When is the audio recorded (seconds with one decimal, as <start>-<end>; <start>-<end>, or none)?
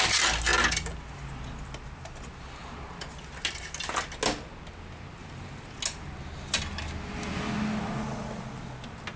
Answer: 0.0-9.2